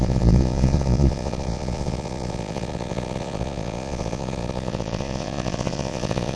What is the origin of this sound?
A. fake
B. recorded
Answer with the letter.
A